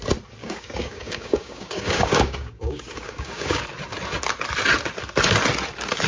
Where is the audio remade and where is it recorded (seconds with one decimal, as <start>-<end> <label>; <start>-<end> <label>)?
0.0-0.4 recorded; 0.4-3.6 remade; 3.6-6.1 recorded